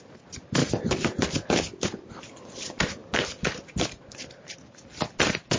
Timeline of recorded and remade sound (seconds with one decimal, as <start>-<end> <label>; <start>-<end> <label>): 0.0-5.6 recorded